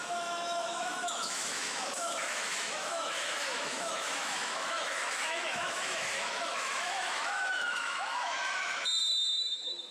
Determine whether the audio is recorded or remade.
remade